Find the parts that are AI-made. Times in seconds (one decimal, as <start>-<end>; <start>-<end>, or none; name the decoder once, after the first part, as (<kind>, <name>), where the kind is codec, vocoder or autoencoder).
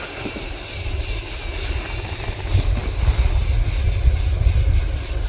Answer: none